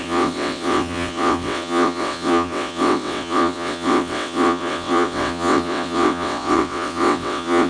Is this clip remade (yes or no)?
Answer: yes